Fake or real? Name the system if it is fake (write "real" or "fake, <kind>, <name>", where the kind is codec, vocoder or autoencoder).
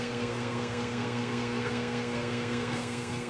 fake, codec, SNAC